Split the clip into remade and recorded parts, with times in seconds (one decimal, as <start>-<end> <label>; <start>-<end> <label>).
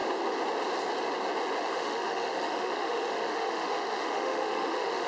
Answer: 0.0-1.6 recorded; 1.6-5.1 remade